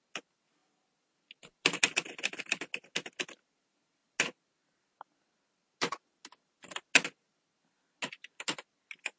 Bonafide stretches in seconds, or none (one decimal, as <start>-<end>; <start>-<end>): 0.0-9.2